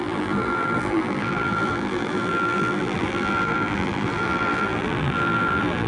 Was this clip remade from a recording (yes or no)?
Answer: yes